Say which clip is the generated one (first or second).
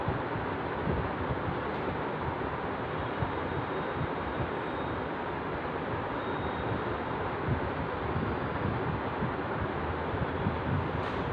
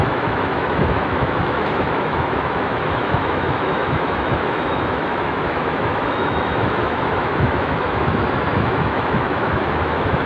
second